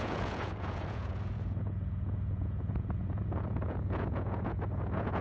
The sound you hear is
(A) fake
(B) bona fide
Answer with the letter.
A